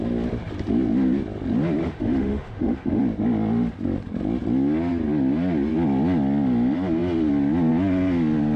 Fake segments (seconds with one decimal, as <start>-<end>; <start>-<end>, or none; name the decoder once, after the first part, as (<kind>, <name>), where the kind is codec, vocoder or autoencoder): 1.8-3.0 (autoencoder, DAC-VAE)